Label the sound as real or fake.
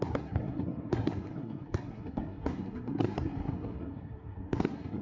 fake